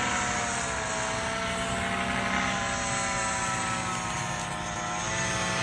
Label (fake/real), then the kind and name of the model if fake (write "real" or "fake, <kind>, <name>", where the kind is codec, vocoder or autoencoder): real